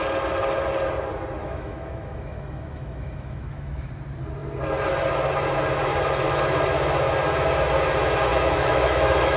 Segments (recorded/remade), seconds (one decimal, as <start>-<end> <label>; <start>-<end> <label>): 0.0-1.4 recorded; 1.4-3.9 remade; 3.9-8.3 recorded; 8.3-9.4 remade